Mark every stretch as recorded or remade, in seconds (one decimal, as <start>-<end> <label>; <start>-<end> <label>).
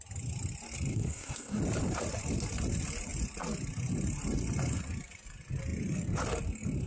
0.0-0.9 recorded; 0.9-1.6 remade; 1.6-6.9 recorded